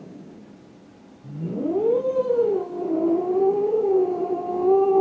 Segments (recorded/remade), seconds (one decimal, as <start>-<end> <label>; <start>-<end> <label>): 0.0-0.4 remade; 0.4-3.4 recorded; 3.4-4.0 remade; 4.0-4.5 recorded; 4.5-5.0 remade

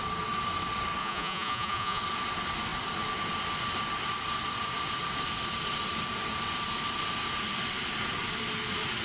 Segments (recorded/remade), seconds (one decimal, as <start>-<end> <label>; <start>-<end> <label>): 0.0-1.0 recorded; 1.0-2.0 remade; 2.0-9.0 recorded

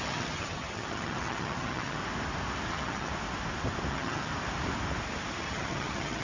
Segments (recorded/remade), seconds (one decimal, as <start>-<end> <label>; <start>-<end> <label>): 0.0-2.0 remade; 2.0-2.7 recorded; 2.7-3.1 remade; 3.1-3.9 recorded; 3.9-4.3 remade; 4.3-5.4 recorded; 5.4-6.2 remade

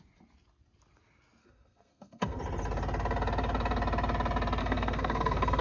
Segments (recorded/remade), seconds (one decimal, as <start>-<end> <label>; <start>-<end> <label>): 0.0-1.4 recorded; 1.4-2.4 remade; 2.4-4.6 recorded; 4.6-5.6 remade

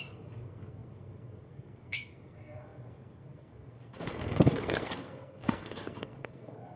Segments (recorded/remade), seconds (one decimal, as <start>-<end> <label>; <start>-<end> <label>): 0.0-6.8 remade

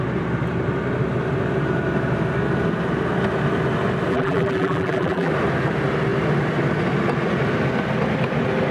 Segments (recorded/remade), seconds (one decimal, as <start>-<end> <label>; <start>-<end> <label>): 0.0-4.1 recorded; 4.1-5.3 remade; 5.3-8.7 recorded

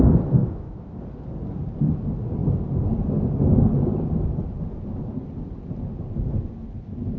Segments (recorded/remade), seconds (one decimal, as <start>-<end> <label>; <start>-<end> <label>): 0.0-0.4 recorded; 0.4-1.0 remade; 1.0-7.2 recorded